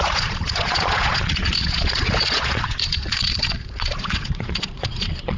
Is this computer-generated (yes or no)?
yes